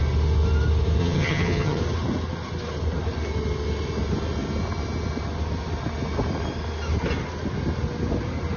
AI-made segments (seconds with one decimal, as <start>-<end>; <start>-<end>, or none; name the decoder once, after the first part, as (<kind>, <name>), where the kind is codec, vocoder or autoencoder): 1.0-1.8 (vocoder, HiFi-GAN)